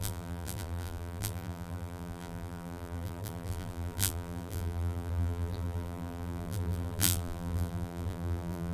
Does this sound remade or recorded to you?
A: remade